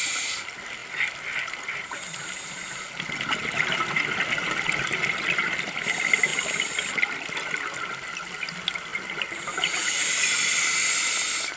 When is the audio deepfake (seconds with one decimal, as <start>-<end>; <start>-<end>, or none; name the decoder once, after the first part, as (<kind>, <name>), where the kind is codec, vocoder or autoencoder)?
none